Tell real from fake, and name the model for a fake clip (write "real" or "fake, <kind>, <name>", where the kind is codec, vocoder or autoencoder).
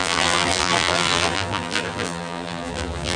fake, vocoder, BigVGAN v2